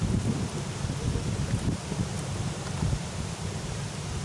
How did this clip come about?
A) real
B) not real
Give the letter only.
A